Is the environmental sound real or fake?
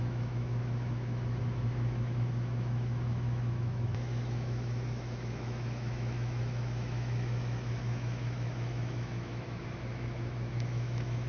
fake